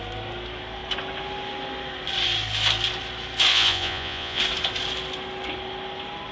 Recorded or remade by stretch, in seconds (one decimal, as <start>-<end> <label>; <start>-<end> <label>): 0.0-3.5 recorded; 3.5-4.4 remade; 4.4-6.3 recorded